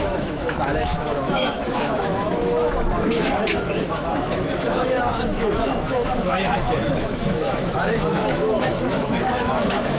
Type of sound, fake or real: fake